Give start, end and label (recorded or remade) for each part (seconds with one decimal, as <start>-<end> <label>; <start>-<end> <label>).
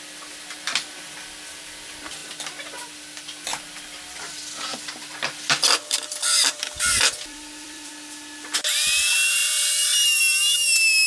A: 0.0-4.7 recorded; 4.7-7.9 remade; 7.9-9.4 recorded; 9.4-10.2 remade; 10.2-11.1 recorded